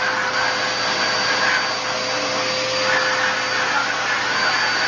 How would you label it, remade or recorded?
recorded